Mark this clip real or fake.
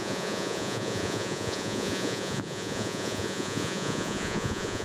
fake